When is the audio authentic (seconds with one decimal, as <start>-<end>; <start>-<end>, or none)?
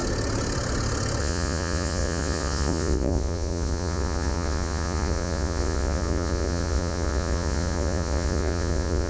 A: 0.0-1.2